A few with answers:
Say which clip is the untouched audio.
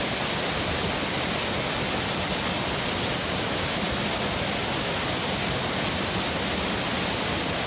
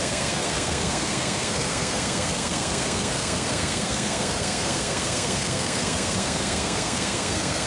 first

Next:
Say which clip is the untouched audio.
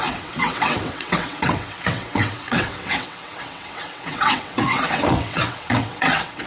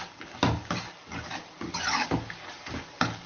second